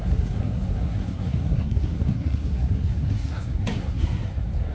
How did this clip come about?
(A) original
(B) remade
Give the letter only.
B